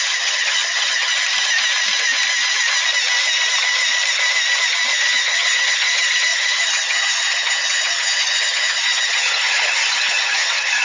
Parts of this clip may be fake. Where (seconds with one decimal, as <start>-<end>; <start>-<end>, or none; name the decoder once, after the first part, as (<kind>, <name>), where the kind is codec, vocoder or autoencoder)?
0.0-1.1 (vocoder, HiFi-GAN); 4.9-10.8